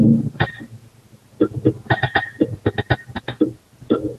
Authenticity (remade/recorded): recorded